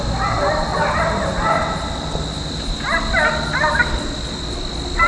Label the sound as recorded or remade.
recorded